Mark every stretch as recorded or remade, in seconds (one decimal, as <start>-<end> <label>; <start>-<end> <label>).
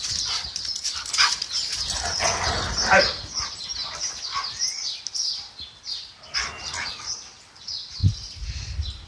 0.0-3.7 recorded; 3.7-5.0 remade; 5.0-9.1 recorded